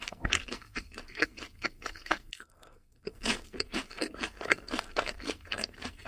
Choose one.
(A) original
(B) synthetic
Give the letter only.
B